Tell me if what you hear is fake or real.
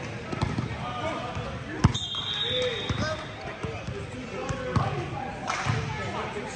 real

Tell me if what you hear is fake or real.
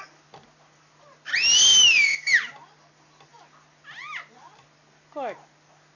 real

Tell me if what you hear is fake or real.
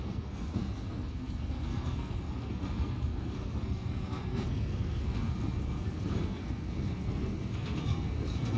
fake